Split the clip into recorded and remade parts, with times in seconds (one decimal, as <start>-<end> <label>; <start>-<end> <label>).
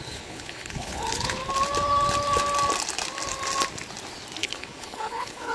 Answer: 0.0-1.4 remade; 1.4-4.4 recorded; 4.4-5.5 remade